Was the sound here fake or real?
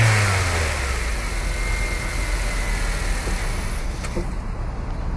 real